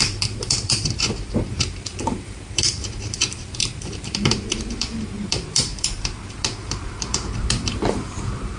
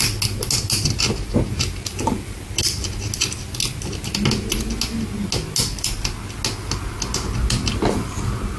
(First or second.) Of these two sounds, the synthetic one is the first